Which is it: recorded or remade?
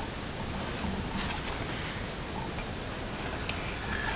recorded